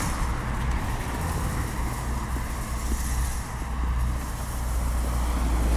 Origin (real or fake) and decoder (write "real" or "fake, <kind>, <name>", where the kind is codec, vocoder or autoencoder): real